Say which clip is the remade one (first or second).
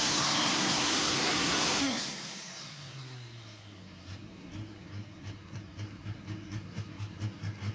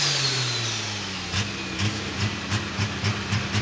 first